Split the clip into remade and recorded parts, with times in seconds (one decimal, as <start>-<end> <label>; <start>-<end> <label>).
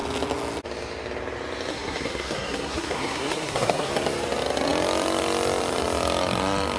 0.0-1.7 recorded; 1.7-3.9 remade; 3.9-6.8 recorded